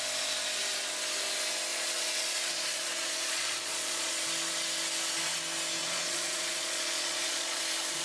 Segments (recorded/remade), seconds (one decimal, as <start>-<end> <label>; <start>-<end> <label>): 0.0-1.7 recorded; 1.7-4.1 remade; 4.1-5.8 recorded; 5.8-7.6 remade; 7.6-8.0 recorded